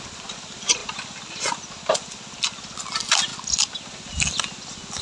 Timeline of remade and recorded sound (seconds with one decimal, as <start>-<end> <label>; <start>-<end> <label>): 0.0-5.0 recorded